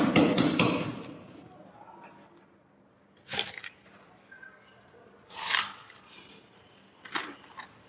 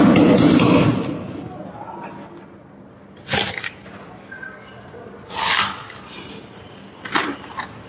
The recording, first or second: second